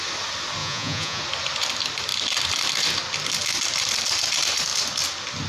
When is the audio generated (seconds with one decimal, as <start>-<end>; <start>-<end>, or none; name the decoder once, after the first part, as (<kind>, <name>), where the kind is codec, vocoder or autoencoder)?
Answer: 0.6-1.2 (vocoder, Vocos)